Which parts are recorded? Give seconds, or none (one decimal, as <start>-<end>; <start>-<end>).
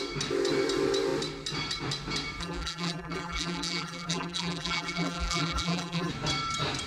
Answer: 0.0-2.4; 6.1-6.9